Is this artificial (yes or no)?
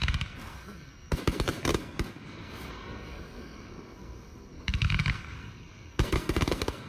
yes